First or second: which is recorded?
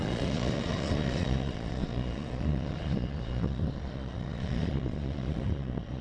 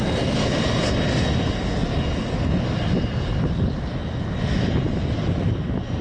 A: second